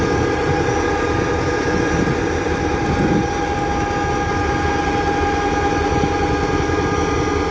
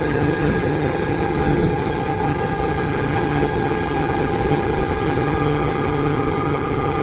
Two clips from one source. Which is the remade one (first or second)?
second